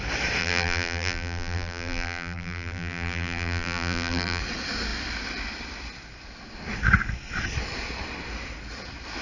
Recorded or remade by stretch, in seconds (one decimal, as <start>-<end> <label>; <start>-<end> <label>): 0.0-0.4 recorded; 0.4-4.4 remade; 4.4-9.2 recorded

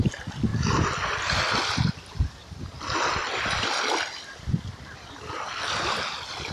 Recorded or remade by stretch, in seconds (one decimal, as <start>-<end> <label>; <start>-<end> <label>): 0.0-6.5 recorded

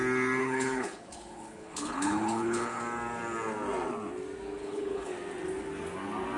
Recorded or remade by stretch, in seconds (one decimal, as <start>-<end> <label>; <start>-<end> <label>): 0.0-0.4 recorded; 0.4-2.8 remade; 2.8-4.6 recorded; 4.6-5.1 remade; 5.1-6.4 recorded

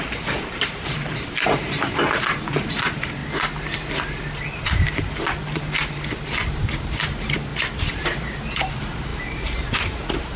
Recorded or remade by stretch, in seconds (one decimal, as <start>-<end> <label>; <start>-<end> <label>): 0.0-3.2 remade; 3.2-4.5 recorded; 4.5-5.8 remade; 5.8-6.4 recorded; 6.4-7.5 remade; 7.5-8.7 recorded; 8.7-10.4 remade